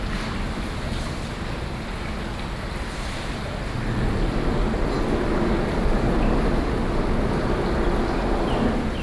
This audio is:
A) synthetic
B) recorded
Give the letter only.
B